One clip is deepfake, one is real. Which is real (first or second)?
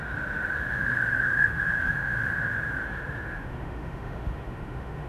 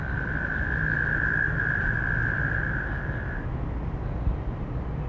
second